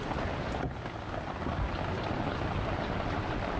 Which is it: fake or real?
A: real